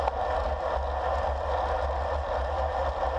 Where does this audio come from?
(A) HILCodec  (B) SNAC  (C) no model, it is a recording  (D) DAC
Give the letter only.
C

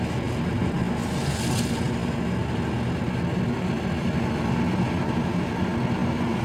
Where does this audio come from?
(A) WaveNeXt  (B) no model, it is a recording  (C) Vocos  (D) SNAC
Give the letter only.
B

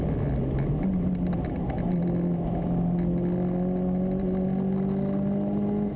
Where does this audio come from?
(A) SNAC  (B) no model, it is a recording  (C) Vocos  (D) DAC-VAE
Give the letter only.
B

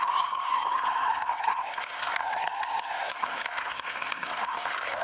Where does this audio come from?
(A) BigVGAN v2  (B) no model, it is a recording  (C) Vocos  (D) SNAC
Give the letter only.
D